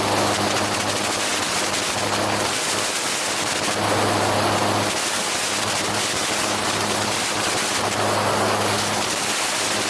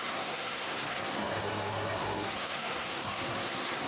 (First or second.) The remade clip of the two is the second